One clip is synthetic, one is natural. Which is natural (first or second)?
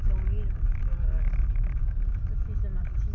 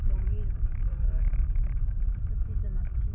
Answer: first